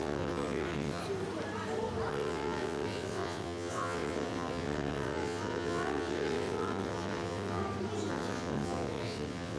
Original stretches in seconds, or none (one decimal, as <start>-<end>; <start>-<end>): 1.0-2.1; 7.6-8.1